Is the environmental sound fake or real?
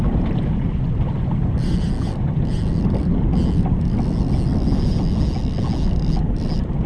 real